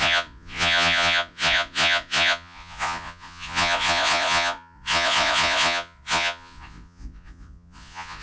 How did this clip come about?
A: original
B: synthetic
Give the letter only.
B